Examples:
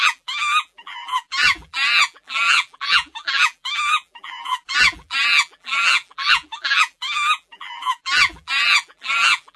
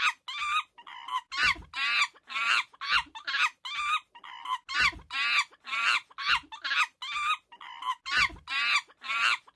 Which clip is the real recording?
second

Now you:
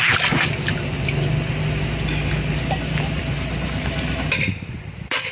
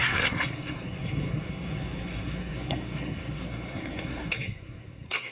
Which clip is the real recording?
first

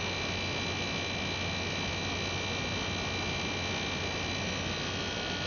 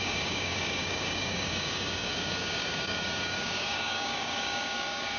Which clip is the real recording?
first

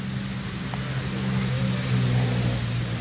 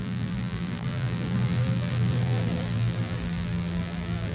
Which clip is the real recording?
first